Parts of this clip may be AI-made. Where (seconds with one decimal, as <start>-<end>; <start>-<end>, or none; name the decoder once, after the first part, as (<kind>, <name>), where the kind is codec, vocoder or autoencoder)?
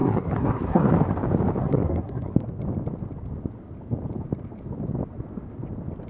0.0-0.9 (codec, SNAC); 1.6-2.3